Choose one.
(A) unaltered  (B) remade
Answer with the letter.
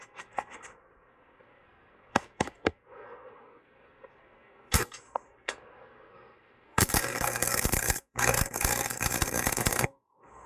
B